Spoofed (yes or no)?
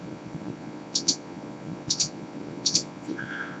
yes